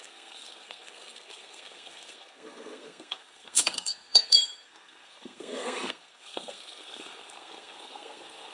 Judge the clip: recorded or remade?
remade